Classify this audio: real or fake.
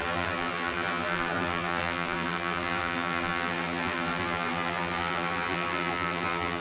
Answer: fake